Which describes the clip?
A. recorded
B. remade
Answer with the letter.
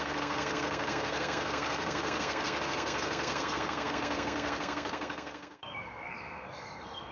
B